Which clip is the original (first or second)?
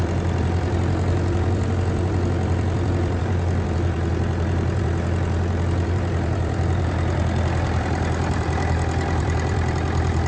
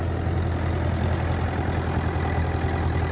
second